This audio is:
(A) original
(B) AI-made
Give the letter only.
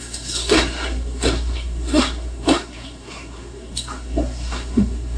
B